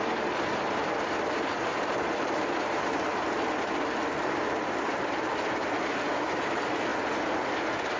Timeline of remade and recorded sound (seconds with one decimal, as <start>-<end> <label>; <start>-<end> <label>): 0.0-8.0 recorded